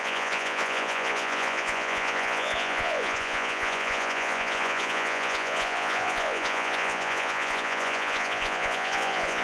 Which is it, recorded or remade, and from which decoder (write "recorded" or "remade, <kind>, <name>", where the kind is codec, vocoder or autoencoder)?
remade, vocoder, Vocos